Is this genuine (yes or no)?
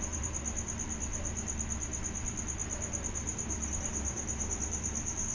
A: no